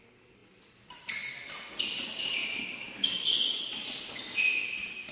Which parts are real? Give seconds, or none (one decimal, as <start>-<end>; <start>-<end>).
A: 0.0-2.4; 3.6-5.1